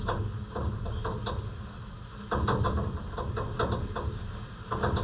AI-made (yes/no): no